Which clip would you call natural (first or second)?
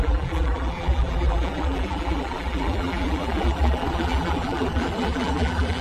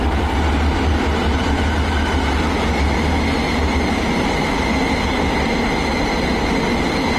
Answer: second